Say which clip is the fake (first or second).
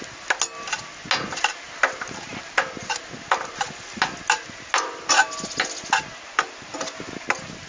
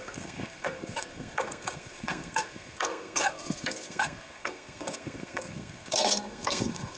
second